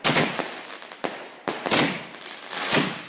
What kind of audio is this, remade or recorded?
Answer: recorded